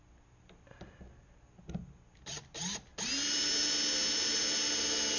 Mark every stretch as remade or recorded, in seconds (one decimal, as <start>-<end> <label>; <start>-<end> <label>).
0.0-5.2 recorded